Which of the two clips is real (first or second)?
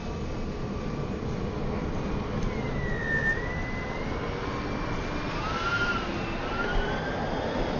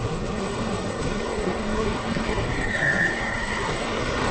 first